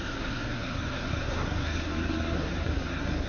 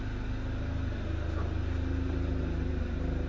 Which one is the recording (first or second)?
second